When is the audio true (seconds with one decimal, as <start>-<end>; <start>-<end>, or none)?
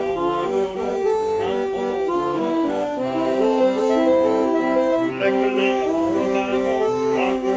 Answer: 0.9-2.1; 3.8-5.1